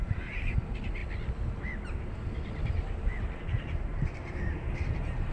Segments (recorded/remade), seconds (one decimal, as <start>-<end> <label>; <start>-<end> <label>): 0.0-1.0 remade; 1.0-3.4 recorded; 3.4-5.3 remade